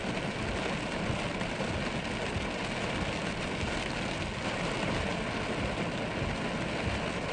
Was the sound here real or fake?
real